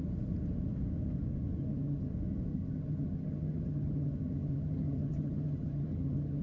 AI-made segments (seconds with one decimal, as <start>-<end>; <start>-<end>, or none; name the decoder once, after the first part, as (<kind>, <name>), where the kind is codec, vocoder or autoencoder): 1.6-2.1 (vocoder, HiFi-GAN); 2.5-6.4